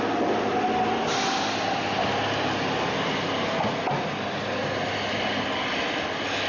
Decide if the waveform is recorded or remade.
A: recorded